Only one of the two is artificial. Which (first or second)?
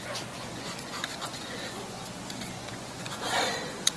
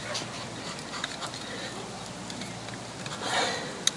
first